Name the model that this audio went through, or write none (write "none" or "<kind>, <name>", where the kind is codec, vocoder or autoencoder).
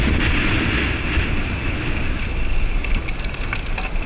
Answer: none